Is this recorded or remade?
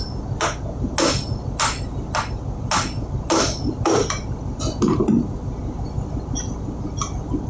recorded